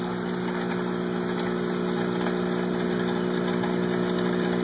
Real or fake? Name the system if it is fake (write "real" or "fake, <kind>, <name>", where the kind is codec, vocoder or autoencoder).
real